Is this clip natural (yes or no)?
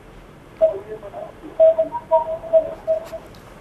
yes